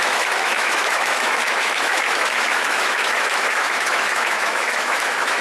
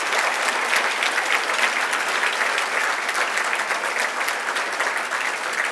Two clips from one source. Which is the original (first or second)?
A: second